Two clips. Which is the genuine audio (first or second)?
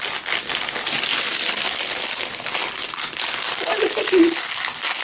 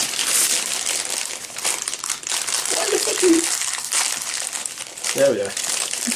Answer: first